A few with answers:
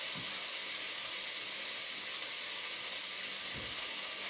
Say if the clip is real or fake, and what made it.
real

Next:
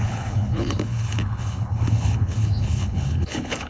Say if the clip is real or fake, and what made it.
fake, codec, HILCodec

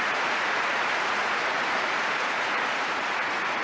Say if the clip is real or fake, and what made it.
fake, vocoder, Vocos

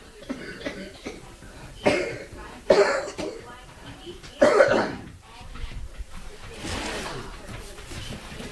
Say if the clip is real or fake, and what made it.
fake, vocoder, BigVGAN v2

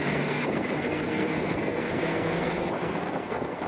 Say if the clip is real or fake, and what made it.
fake, codec, SNAC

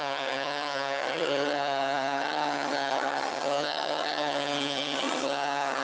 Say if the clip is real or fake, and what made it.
fake, vocoder, HiFi-GAN